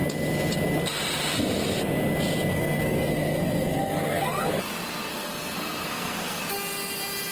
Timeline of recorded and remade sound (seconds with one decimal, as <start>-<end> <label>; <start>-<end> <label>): 0.0-2.5 recorded; 2.5-4.6 remade; 4.6-5.1 recorded; 5.1-6.4 remade; 6.4-7.3 recorded